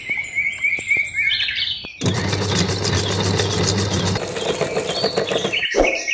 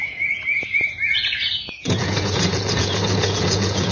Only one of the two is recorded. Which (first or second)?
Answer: first